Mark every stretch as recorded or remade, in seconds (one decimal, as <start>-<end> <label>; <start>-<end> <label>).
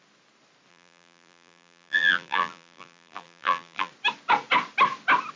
0.0-0.7 recorded; 0.7-3.9 remade; 3.9-5.4 recorded